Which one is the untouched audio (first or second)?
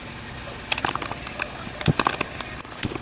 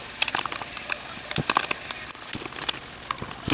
first